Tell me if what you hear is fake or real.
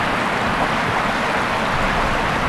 real